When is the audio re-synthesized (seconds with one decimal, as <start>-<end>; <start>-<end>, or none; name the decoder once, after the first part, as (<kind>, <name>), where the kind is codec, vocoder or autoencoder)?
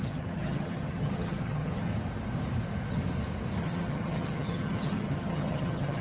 0.0-1.9 (vocoder, HiFi-GAN); 3.6-6.0